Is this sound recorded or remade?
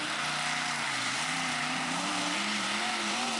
remade